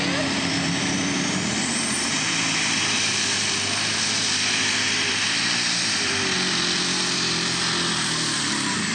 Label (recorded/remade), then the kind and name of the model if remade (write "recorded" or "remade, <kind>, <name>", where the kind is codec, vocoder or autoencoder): remade, vocoder, BigVGAN v2